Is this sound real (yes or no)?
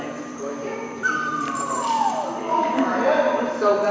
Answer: no